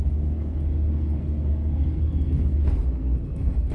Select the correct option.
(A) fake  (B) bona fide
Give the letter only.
A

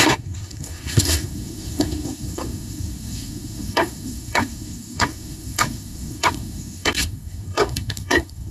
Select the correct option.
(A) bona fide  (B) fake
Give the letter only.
B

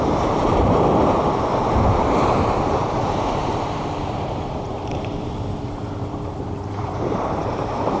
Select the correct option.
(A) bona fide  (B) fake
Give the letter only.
B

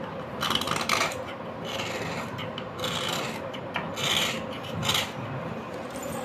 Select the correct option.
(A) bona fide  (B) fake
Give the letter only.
A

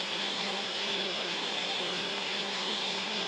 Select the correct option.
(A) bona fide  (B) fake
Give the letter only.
B